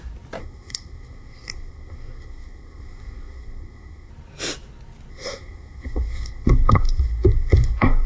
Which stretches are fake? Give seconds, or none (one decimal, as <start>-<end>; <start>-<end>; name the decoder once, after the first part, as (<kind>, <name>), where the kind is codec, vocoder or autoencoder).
0.4-4.1 (codec, SNAC); 5.1-8.1